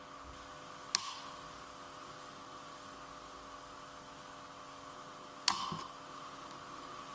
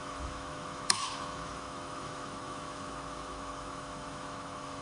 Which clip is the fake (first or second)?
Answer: second